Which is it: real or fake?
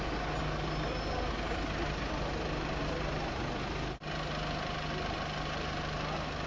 real